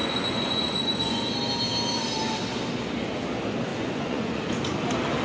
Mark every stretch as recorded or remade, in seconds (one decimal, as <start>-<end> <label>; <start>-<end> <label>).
0.0-1.2 remade; 1.2-3.7 recorded; 3.7-4.4 remade; 4.4-5.2 recorded